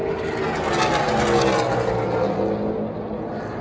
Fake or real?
real